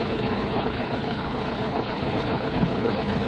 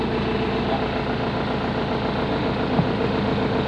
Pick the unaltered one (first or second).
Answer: second